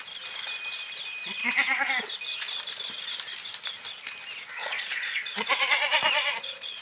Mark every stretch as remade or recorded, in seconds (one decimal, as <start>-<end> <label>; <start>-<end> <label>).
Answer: 0.0-1.4 recorded; 1.4-1.9 remade; 1.9-4.6 recorded; 4.6-6.8 remade